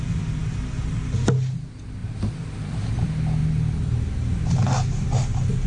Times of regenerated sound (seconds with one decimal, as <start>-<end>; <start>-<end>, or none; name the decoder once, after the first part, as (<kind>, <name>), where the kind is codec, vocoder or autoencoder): 2.0-2.9 (vocoder, BigVGAN v2)